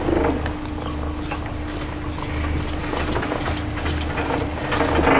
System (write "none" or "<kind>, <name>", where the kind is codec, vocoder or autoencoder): none